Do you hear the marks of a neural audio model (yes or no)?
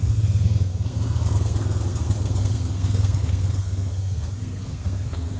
yes